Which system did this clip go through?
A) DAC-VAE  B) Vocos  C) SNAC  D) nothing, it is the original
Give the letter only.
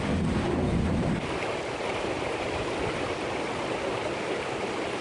D